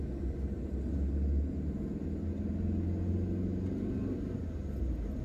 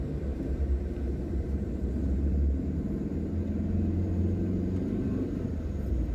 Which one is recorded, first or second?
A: first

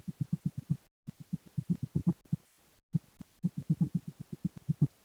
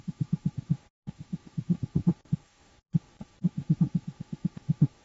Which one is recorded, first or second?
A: first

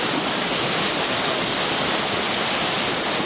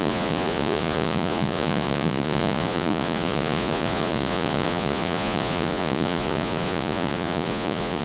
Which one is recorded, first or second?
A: first